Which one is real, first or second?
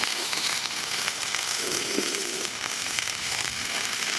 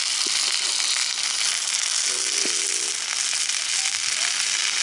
second